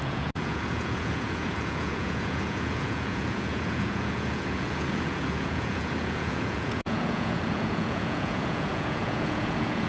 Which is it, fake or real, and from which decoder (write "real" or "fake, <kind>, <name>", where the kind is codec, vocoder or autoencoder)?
fake, vocoder, Vocos